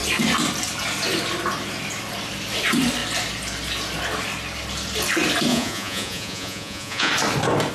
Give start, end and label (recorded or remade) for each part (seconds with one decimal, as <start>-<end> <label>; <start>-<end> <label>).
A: 0.0-5.5 recorded; 5.5-7.1 remade; 7.1-7.7 recorded